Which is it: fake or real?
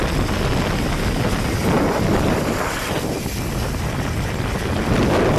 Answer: real